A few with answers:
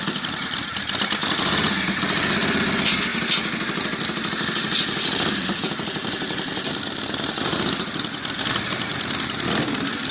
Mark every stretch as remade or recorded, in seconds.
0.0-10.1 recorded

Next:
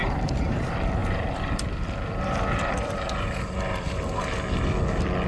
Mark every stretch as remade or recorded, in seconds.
0.0-0.6 remade; 0.6-1.0 recorded; 1.0-4.2 remade; 4.2-5.3 recorded